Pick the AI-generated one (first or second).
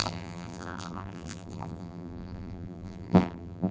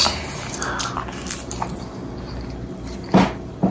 first